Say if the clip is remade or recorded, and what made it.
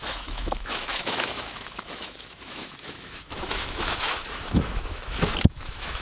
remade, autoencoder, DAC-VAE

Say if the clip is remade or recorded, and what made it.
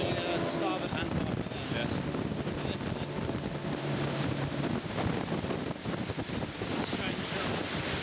recorded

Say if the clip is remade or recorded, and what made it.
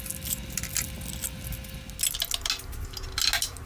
recorded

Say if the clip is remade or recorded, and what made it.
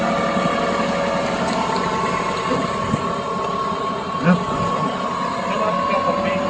recorded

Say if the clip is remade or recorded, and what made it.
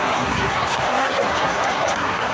remade, codec, SNAC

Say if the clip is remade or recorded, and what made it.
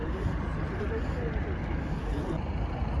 recorded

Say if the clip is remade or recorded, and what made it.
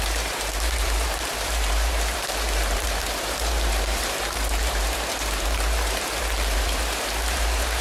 remade, vocoder, BigVGAN v2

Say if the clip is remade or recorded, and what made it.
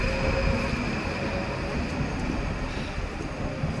recorded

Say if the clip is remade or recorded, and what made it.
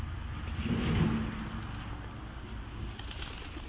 recorded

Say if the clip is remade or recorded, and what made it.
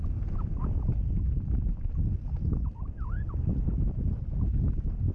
recorded